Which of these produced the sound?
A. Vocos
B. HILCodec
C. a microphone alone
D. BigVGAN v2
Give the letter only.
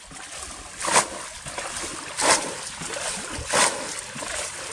C